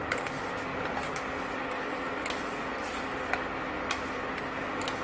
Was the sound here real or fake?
real